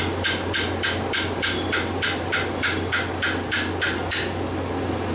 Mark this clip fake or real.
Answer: real